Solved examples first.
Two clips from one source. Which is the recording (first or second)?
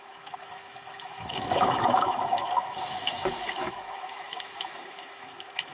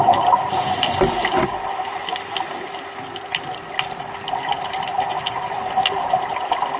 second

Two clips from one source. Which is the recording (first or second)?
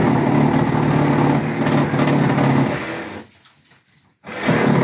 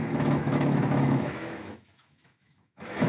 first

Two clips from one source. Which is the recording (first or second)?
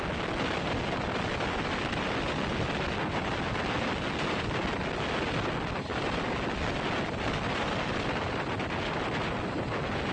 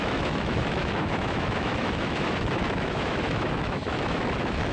first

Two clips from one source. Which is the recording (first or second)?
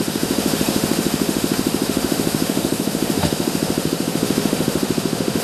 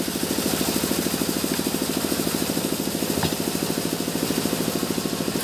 second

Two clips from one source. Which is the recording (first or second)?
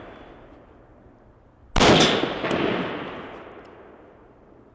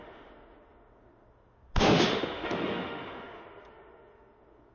first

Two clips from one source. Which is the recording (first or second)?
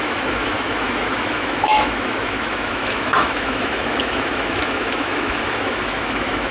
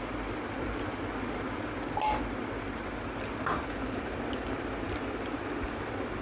second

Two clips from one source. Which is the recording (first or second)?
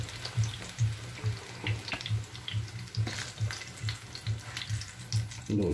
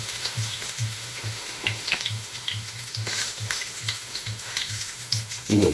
first